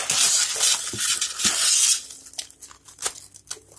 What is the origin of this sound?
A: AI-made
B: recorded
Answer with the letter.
B